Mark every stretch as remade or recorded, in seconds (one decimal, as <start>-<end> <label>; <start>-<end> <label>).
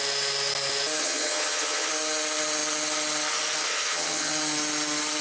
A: 0.0-1.0 recorded; 1.0-1.9 remade; 1.9-3.6 recorded; 3.6-4.3 remade; 4.3-5.2 recorded